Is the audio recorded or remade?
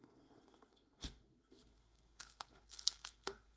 remade